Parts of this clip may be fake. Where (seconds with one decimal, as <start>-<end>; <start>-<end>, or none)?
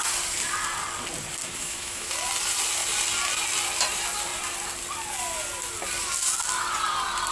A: 1.4-2.1